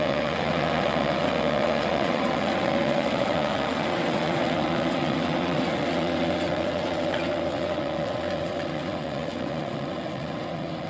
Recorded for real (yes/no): no